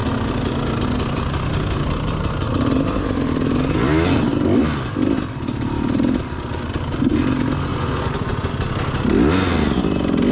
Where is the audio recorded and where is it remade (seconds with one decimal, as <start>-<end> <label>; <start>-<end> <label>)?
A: 0.0-7.7 recorded; 7.7-8.5 remade; 8.5-10.3 recorded

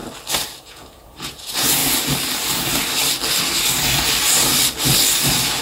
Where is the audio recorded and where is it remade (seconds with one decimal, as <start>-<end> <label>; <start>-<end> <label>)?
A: 0.0-0.6 recorded; 0.6-1.8 remade; 1.8-5.6 recorded

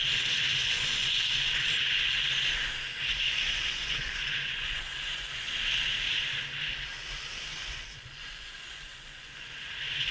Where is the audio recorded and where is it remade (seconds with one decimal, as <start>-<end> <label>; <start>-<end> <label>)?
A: 0.0-0.6 recorded; 0.6-1.5 remade; 1.5-3.1 recorded; 3.1-5.6 remade; 5.6-7.5 recorded; 7.5-9.7 remade; 9.7-10.1 recorded

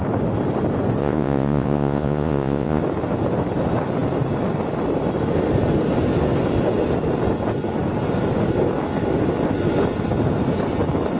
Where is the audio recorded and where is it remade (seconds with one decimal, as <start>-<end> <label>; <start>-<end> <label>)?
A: 0.0-1.0 recorded; 1.0-2.8 remade; 2.8-11.2 recorded

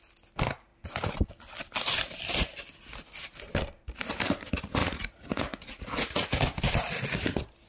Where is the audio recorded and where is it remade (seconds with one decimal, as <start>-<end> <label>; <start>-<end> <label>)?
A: 0.0-4.8 recorded; 4.8-6.4 remade; 6.4-7.7 recorded

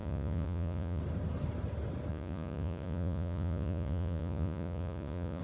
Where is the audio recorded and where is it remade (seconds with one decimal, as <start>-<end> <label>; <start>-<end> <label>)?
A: 0.0-1.0 remade; 1.0-2.1 recorded; 2.1-5.4 remade